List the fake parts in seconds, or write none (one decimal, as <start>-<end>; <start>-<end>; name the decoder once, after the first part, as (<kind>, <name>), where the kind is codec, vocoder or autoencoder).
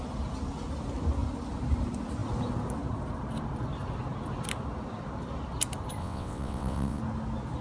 6.0-7.0 (vocoder, WaveNeXt)